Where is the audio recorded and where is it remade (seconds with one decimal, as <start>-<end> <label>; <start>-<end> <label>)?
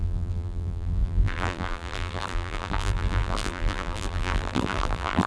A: 0.0-5.3 remade